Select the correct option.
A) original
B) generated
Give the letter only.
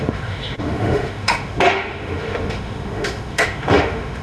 B